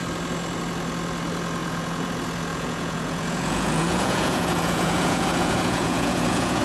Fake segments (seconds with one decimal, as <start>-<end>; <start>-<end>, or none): 1.6-2.1; 2.5-6.6